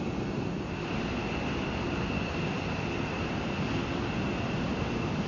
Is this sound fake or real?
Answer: real